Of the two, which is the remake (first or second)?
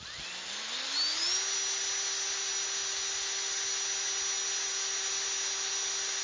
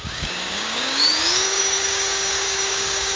second